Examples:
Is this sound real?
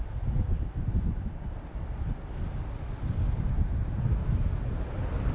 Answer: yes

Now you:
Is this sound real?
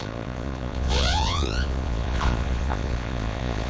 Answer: no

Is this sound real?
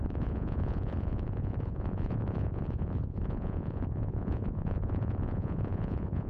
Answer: no